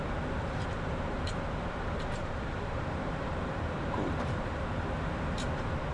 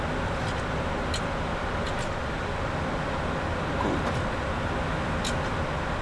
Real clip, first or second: second